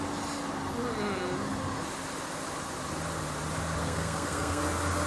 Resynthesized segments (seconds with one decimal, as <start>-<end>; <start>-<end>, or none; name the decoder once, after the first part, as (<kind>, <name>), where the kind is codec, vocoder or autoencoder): 3.8-4.6 (codec, SNAC)